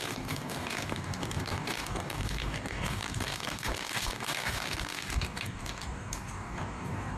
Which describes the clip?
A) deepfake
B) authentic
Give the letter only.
A